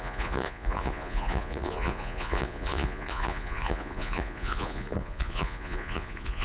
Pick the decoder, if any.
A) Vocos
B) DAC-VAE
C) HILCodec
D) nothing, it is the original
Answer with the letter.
A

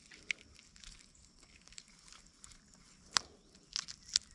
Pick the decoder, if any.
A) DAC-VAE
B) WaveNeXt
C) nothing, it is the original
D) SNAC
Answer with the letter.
C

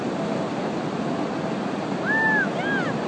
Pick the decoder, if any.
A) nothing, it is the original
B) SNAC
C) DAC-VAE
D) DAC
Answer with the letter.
A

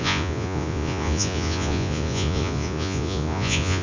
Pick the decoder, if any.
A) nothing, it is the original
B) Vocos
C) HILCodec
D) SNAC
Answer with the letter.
B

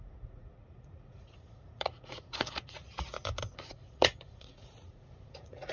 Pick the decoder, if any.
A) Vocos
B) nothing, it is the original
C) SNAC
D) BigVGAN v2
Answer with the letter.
A